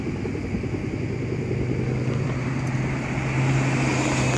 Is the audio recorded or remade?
recorded